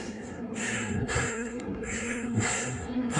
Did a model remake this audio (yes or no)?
yes